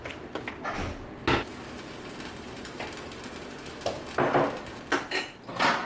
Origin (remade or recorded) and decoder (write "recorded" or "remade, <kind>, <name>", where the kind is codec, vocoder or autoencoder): recorded